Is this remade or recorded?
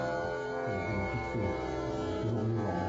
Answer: recorded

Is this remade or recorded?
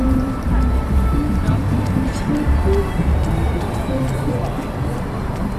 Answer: remade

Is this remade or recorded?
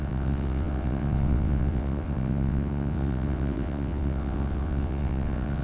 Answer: remade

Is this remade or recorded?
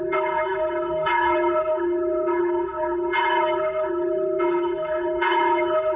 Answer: remade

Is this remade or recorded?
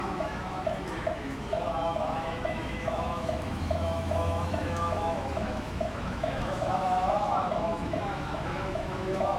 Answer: remade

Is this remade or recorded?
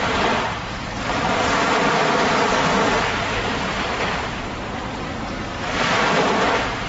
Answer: recorded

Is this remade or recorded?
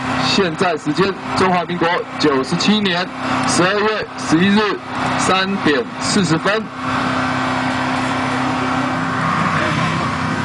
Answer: recorded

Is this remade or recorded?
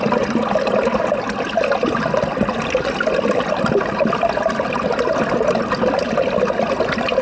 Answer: recorded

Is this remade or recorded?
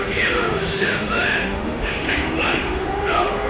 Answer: remade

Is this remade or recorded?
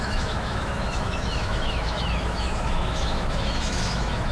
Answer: remade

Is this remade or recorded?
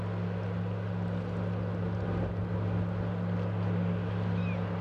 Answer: recorded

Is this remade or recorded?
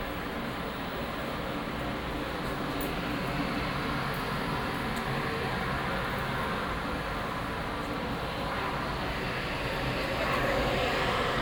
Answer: recorded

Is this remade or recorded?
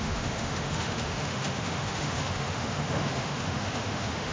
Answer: remade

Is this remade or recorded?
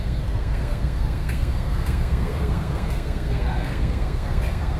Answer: remade